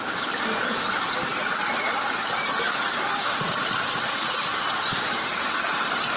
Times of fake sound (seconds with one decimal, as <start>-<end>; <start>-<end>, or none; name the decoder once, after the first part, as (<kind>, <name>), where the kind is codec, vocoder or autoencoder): 1.4-4.5 (vocoder, BigVGAN v2)